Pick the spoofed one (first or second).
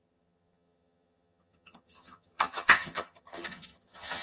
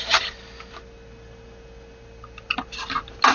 first